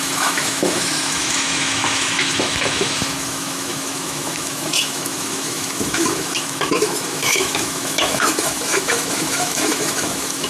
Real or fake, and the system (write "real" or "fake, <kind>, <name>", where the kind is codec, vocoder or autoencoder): fake, autoencoder, DAC-VAE